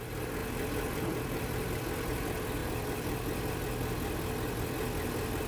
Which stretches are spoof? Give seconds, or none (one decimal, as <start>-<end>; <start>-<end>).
0.4-1.8; 2.6-3.5